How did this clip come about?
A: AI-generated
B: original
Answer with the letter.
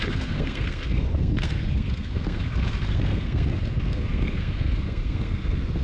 A